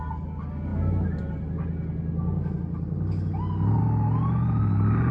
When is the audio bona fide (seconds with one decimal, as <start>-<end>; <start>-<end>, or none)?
0.0-5.1